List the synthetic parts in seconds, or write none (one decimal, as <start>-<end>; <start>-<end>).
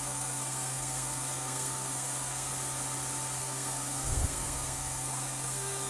0.0-2.5; 3.4-5.9